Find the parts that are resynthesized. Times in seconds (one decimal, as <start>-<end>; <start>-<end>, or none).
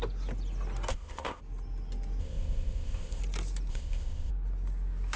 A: 0.9-1.4; 2.2-3.2; 3.7-4.3